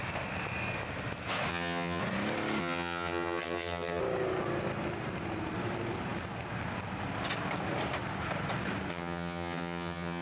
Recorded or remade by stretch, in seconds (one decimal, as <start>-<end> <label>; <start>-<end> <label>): 0.0-1.5 recorded; 1.5-2.0 remade; 2.0-2.6 recorded; 2.6-4.0 remade; 4.0-8.9 recorded; 8.9-10.2 remade